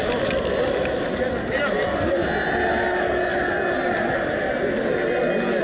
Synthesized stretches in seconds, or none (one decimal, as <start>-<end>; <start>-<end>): none